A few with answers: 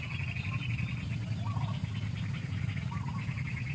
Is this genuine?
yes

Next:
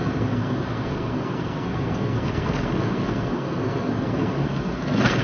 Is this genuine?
no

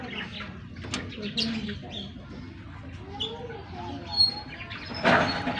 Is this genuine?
yes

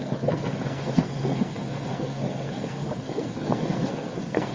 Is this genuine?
no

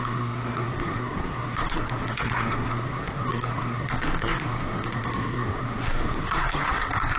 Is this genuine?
no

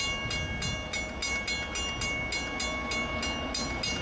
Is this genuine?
yes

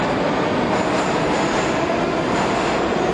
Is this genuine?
yes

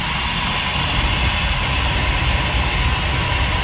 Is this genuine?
yes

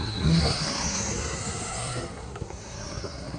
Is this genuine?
no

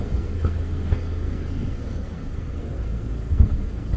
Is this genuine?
no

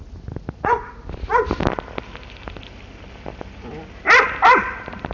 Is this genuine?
yes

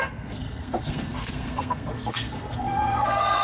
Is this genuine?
no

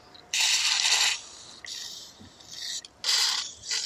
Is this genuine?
yes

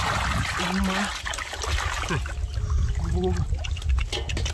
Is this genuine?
yes